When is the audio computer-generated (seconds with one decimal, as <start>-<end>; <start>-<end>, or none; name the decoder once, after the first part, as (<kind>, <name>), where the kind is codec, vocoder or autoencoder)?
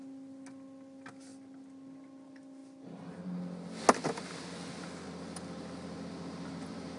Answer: none